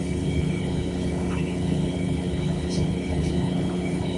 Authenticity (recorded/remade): remade